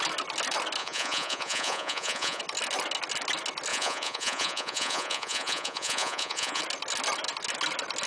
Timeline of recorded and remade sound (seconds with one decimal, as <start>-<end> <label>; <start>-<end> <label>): 0.0-0.8 recorded; 0.8-2.4 remade; 2.4-3.7 recorded; 3.7-6.6 remade; 6.6-8.1 recorded